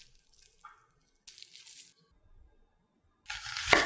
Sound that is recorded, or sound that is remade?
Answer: recorded